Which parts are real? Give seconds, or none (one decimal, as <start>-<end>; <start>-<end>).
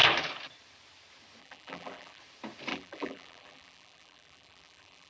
0.0-1.4; 2.2-2.7